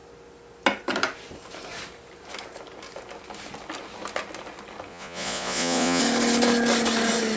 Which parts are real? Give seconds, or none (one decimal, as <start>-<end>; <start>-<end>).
0.0-4.9; 6.0-7.4

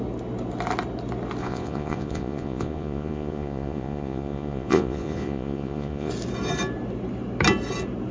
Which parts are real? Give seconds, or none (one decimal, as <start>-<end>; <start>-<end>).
0.0-1.4; 6.1-8.1

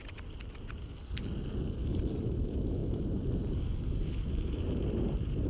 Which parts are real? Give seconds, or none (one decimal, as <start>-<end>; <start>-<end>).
0.0-5.5

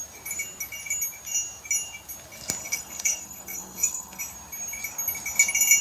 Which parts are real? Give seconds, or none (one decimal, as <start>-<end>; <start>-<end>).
0.0-2.6; 4.2-5.8

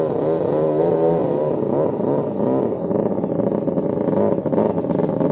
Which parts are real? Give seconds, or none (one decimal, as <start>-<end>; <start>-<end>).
0.0-5.3

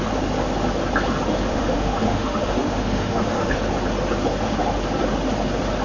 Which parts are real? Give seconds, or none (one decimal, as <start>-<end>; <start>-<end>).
0.0-1.5; 3.6-5.8

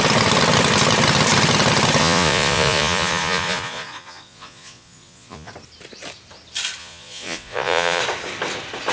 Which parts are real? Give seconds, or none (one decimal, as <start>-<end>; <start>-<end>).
0.0-2.0; 5.5-6.8; 8.0-8.9

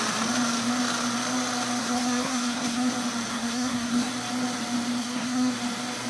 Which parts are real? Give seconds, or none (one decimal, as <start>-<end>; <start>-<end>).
0.0-1.8; 2.9-3.3; 4.1-5.0; 5.5-6.1